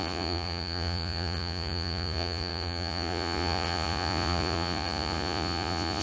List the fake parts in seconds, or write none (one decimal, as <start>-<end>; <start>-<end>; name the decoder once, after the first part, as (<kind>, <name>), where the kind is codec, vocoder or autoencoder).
0.0-6.0 (vocoder, Vocos)